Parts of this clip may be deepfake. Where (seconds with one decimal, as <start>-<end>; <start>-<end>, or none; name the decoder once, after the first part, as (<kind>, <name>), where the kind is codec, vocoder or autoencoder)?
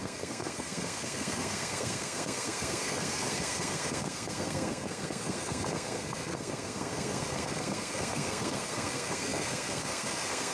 0.0-10.5 (codec, SNAC)